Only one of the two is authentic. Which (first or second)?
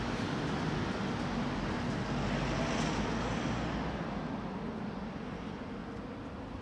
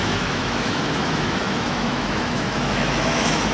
first